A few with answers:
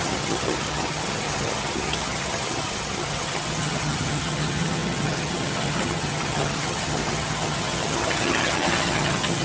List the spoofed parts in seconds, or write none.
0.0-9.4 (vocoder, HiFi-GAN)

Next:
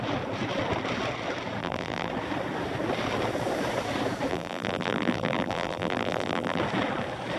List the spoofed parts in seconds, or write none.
1.6-2.1 (vocoder, BigVGAN v2); 4.3-6.6

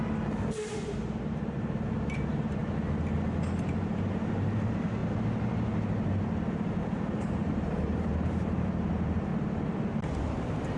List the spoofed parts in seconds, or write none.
0.0-2.6 (vocoder, BigVGAN v2); 3.8-5.0; 6.5-9.3; 10.2-10.8

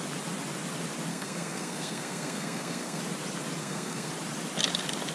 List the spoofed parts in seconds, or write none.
1.1-3.0 (codec, SNAC); 3.6-4.1

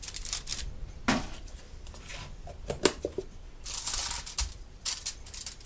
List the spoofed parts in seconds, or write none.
0.0-0.5 (vocoder, BigVGAN v2); 1.0-4.0; 4.5-5.7